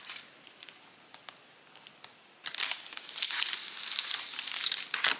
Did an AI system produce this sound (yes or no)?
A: no